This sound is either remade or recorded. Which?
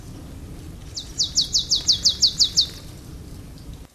recorded